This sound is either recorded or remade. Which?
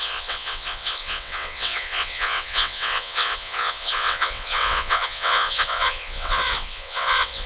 remade